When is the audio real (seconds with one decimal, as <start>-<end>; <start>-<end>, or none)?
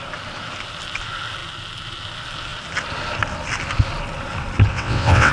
0.0-4.7